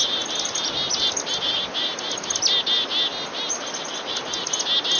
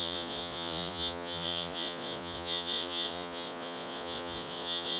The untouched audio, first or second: first